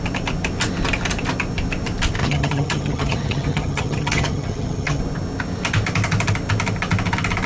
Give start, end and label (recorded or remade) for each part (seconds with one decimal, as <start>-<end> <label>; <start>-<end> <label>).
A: 0.0-2.2 recorded; 2.2-5.0 remade; 5.0-7.5 recorded